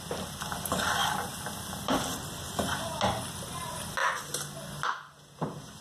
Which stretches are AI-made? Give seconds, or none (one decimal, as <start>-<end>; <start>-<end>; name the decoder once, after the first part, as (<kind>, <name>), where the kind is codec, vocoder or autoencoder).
none